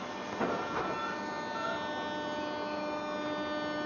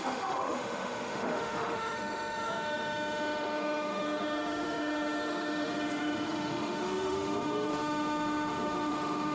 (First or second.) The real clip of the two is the first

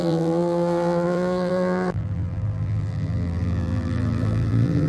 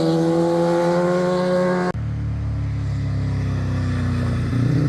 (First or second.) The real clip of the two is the second